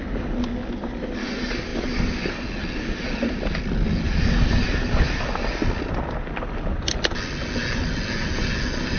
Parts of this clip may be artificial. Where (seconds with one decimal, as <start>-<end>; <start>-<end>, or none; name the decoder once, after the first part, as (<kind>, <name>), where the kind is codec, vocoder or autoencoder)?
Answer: none